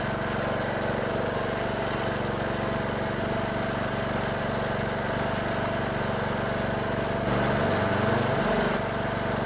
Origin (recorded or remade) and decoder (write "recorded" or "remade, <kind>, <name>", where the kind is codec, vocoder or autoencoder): recorded